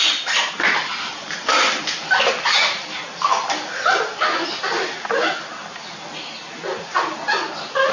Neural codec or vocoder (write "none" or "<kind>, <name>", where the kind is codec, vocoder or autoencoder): none